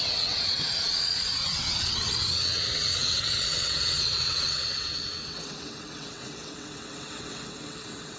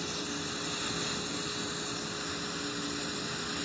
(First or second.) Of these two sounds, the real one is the second